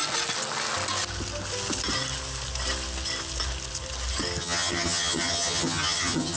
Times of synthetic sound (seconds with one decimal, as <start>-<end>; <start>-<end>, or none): 4.4-6.4